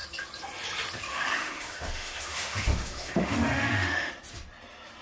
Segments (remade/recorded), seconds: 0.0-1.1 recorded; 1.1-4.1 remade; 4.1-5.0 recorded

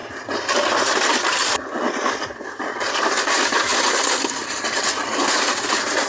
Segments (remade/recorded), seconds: 0.0-6.1 recorded

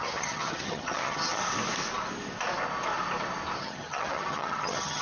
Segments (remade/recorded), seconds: 0.0-1.4 remade; 1.4-3.6 recorded; 3.6-5.0 remade

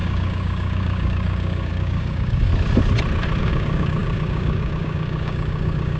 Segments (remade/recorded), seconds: 0.0-2.5 remade; 2.5-3.4 recorded; 3.4-6.0 remade

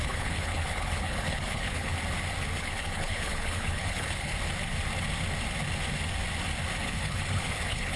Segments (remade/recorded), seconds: 0.0-1.9 remade; 1.9-2.6 recorded; 2.6-4.3 remade; 4.3-6.8 recorded; 6.8-8.0 remade

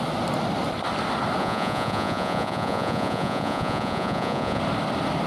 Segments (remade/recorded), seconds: 0.0-1.4 recorded; 1.4-4.6 remade; 4.6-5.3 recorded